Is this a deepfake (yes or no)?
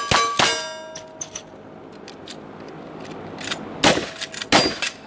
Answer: no